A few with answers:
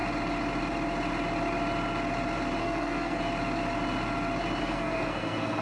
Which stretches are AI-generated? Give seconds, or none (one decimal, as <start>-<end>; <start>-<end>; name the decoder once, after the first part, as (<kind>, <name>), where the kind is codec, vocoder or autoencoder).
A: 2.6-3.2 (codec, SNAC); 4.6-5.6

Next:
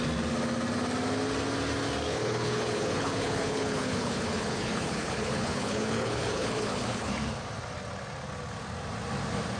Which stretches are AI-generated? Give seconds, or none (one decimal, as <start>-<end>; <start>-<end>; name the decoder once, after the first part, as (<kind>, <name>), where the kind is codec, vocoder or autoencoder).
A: 2.1-7.1 (codec, HILCodec)

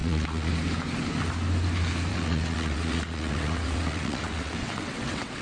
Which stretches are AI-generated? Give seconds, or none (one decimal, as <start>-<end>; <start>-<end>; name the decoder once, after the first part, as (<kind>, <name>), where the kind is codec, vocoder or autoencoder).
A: 0.0-0.5 (vocoder, WaveNeXt); 2.1-5.4

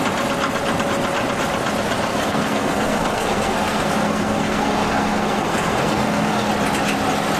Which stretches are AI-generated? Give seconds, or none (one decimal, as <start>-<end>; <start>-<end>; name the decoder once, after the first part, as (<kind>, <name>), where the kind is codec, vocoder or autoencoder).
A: 2.1-6.5 (codec, SNAC)

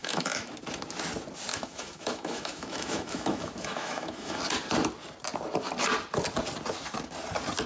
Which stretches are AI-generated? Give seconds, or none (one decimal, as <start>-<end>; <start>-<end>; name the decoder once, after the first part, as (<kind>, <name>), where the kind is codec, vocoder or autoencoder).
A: 0.0-0.5 (autoencoder, DAC-VAE); 1.5-4.4

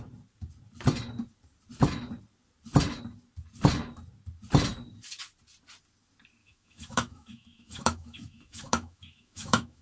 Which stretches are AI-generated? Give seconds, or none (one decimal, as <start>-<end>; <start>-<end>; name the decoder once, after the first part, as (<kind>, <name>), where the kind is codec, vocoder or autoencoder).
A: 6.4-9.8 (autoencoder, DAC-VAE)

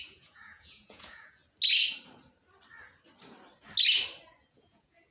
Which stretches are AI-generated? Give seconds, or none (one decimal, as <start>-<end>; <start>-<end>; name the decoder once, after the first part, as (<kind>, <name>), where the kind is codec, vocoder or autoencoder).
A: 0.0-1.4 (vocoder, Vocos); 4.5-5.1

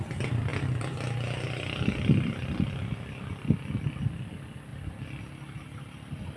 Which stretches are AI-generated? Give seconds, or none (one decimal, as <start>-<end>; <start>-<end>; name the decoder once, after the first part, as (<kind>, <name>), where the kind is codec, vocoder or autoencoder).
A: 0.5-3.8 (vocoder, BigVGAN v2); 4.7-5.2